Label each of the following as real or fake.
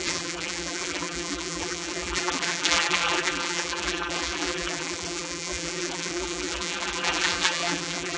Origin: fake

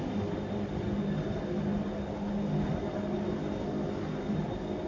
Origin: real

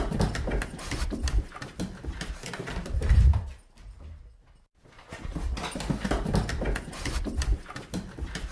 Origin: real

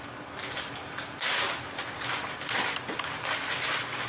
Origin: fake